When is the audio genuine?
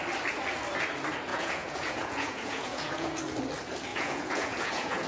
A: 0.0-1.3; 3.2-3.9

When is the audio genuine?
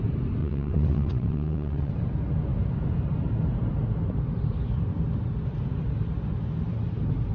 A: 0.0-0.4; 1.9-7.3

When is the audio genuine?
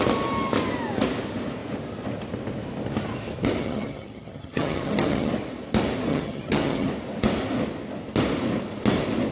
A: 0.0-3.6; 5.3-6.1; 6.9-9.3